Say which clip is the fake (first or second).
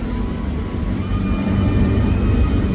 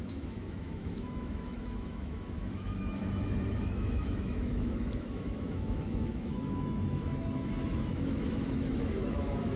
second